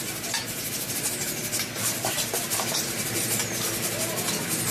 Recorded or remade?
recorded